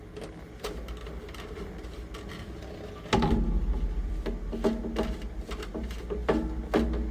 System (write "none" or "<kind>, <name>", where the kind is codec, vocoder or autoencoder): none